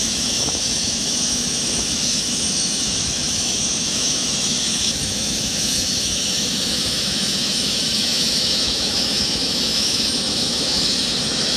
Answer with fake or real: fake